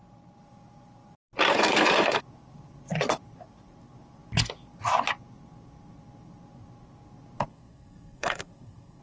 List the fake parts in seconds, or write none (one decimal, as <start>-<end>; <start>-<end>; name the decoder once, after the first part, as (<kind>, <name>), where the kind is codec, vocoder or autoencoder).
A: 1.5-2.2 (codec, SNAC); 7.5-9.0